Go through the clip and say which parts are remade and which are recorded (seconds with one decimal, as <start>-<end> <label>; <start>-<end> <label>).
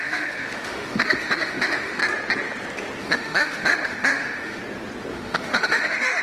0.0-2.0 remade; 2.0-3.0 recorded; 3.0-4.6 remade; 4.6-5.1 recorded; 5.1-6.2 remade